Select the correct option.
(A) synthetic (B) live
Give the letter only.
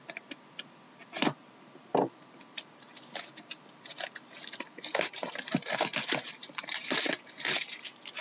A